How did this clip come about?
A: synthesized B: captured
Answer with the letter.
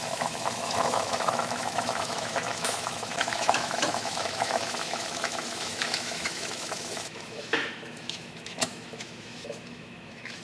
A